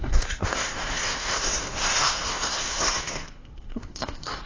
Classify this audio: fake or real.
fake